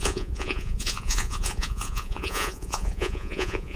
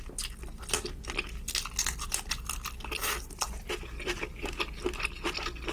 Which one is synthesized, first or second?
first